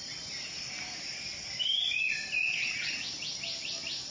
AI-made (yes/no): no